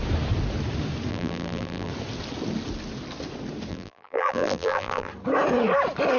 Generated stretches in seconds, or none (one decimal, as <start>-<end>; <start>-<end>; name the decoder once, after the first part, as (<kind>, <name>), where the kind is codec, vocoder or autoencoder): 1.1-1.9 (vocoder, BigVGAN v2); 3.7-5.1